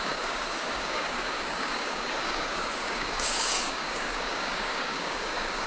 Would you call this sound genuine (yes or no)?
no